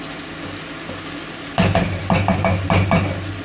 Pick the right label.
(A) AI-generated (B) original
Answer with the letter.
B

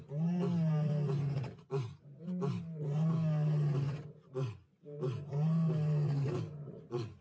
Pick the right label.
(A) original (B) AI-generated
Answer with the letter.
A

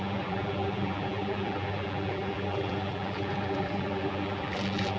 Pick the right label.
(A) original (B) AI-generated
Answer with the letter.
B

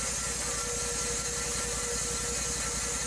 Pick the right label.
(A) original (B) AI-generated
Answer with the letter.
A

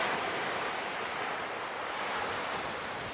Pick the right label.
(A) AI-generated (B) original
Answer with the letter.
A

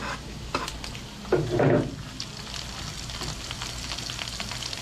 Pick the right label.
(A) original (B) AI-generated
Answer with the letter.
A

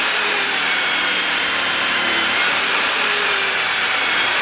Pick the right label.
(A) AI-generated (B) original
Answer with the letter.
A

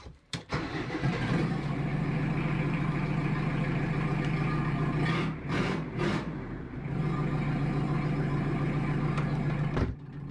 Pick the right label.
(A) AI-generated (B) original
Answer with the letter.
A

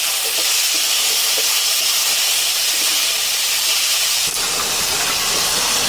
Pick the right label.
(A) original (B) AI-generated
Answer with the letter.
B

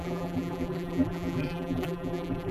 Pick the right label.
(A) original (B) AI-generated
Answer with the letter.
B